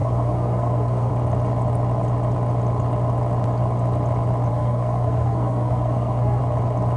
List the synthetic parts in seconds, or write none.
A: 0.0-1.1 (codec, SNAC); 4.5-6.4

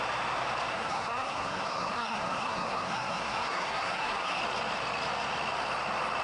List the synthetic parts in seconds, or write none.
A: 0.7-4.4 (codec, SNAC)

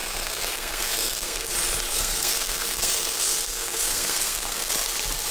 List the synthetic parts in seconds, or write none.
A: 0.0-1.5 (codec, SNAC); 1.9-4.7

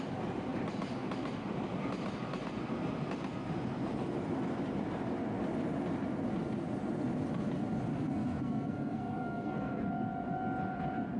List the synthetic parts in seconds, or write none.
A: 7.9-9.9 (codec, SNAC)

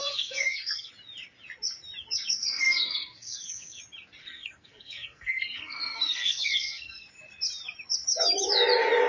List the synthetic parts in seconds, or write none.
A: 0.0-0.9 (codec, SNAC); 2.4-3.8; 4.2-7.1

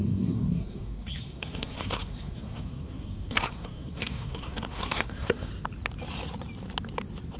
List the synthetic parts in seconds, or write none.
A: 0.0-5.5 (codec, SNAC)